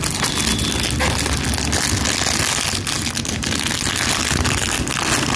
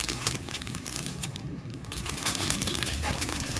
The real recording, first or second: first